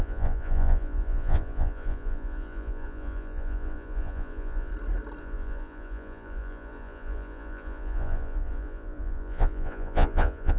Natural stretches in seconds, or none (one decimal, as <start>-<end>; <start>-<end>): 4.7-5.2

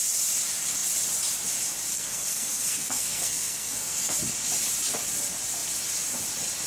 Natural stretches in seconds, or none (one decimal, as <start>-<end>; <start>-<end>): 0.0-1.9; 4.2-6.7

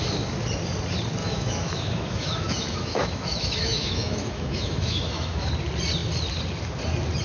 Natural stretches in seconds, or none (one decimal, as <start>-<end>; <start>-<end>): 0.0-1.2; 5.5-7.2